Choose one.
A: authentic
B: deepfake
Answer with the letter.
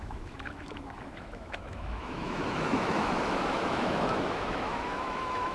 B